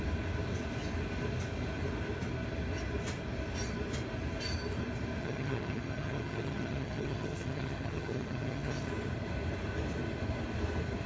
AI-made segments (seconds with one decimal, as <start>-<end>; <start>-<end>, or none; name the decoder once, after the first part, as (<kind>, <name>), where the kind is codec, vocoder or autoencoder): 5.2-8.9 (vocoder, HiFi-GAN)